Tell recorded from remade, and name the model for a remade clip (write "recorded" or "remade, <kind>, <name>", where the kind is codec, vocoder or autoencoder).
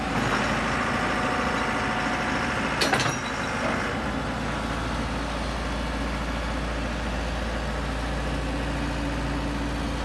recorded